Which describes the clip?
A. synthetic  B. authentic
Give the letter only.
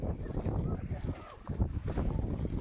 A